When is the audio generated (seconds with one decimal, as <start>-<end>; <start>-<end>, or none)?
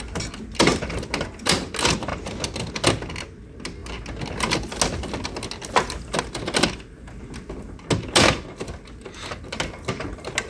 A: none